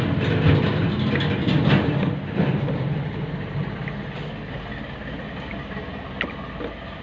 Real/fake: real